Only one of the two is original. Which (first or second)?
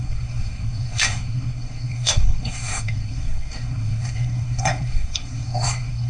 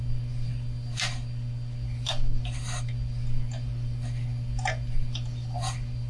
second